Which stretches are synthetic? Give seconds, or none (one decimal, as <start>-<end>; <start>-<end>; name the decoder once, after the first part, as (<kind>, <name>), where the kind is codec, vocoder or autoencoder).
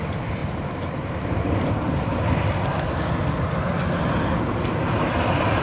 0.0-2.1 (vocoder, BigVGAN v2)